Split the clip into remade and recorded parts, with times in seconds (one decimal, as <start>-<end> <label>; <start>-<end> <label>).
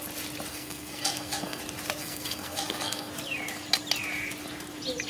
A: 0.0-0.5 recorded; 0.5-1.6 remade; 1.6-2.0 recorded; 2.0-3.1 remade; 3.1-5.1 recorded